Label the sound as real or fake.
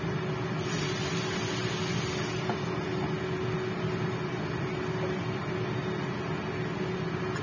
real